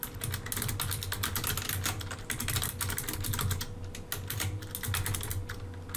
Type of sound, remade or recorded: recorded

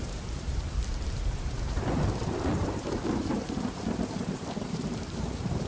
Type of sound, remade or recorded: remade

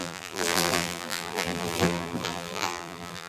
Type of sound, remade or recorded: remade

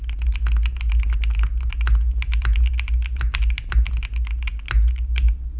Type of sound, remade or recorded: recorded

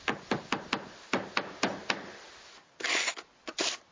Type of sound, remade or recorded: recorded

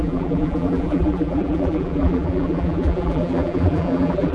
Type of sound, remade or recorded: remade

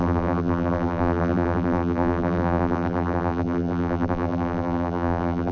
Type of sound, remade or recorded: remade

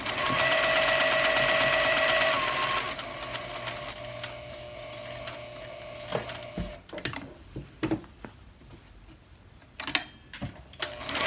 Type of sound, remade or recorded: recorded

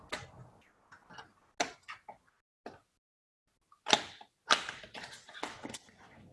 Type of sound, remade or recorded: recorded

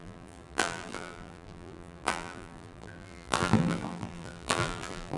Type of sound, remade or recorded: remade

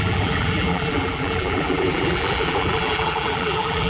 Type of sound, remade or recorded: remade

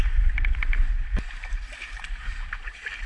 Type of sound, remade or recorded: remade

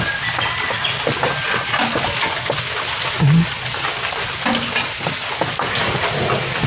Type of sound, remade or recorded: recorded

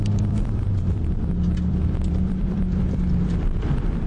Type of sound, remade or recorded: remade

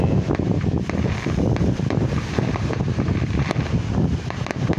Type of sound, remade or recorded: remade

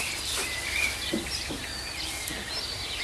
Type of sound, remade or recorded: remade